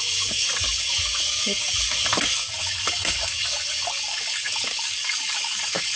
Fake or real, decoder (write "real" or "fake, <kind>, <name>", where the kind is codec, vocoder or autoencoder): fake, codec, DAC